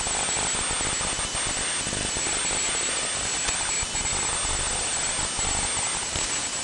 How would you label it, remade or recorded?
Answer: recorded